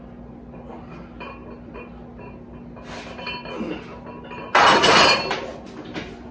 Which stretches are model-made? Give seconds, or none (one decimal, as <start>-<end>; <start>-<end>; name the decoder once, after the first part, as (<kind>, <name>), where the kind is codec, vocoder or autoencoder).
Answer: none